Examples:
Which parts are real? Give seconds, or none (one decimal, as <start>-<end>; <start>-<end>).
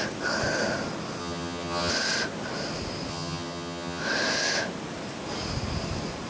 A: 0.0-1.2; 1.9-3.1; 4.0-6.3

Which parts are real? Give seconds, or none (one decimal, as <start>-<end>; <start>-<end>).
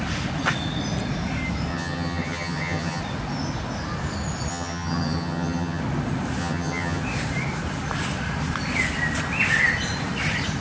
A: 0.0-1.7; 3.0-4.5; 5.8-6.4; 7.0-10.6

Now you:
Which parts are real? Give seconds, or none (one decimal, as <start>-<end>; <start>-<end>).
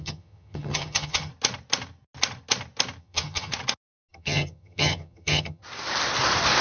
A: 1.3-3.0; 3.5-4.1; 5.6-6.6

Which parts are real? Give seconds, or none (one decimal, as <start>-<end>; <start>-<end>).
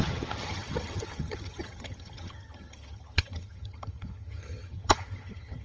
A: none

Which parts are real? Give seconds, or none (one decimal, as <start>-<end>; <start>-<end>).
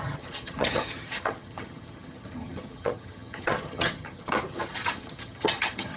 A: none